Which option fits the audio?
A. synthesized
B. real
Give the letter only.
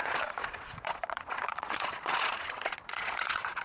A